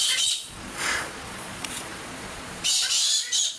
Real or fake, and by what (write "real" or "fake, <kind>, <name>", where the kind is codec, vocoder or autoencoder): fake, vocoder, Vocos